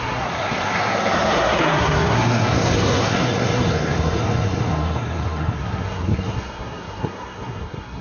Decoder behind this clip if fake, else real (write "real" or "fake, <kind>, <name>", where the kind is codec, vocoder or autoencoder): fake, codec, SNAC